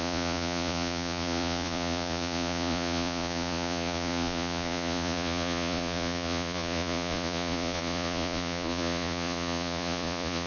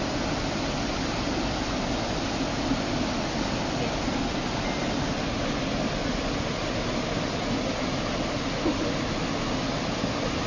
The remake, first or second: first